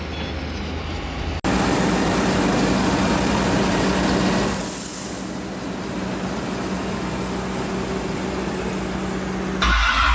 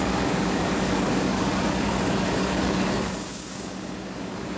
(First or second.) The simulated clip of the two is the second